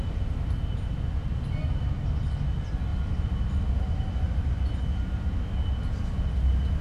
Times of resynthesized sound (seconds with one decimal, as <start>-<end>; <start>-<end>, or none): 1.3-1.9